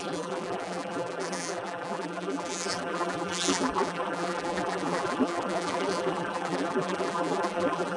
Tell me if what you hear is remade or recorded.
remade